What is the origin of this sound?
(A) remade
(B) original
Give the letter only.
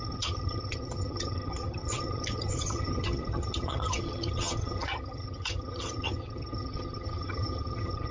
A